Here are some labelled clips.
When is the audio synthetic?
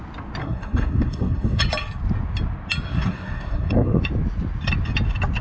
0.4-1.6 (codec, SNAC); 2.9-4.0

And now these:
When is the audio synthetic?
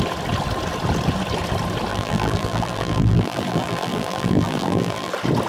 1.9-5.1 (vocoder, BigVGAN v2)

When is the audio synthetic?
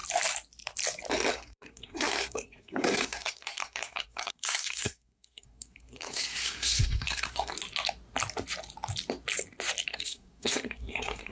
1.3-7.5 (codec, SNAC); 9.9-11.3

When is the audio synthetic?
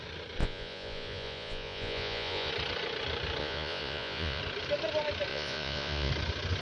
0.4-2.5 (vocoder, Vocos); 3.4-4.4; 5.3-6.1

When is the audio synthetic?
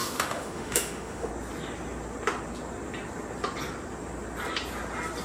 0.0-1.3 (autoencoder, DAC-VAE)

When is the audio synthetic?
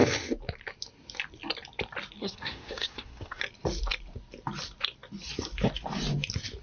2.2-3.4 (codec, SNAC)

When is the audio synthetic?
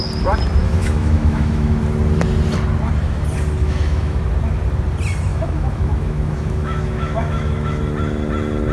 0.6-1.8 (autoencoder, DAC-VAE); 3.6-4.2; 5.3-7.8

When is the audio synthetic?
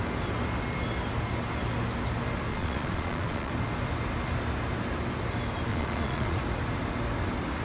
2.5-3.5 (vocoder, Vocos); 5.7-6.4